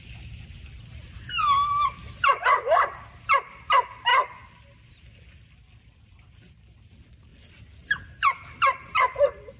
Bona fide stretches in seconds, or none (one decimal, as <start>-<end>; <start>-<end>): 0.0-4.1; 4.6-7.3; 8.1-9.6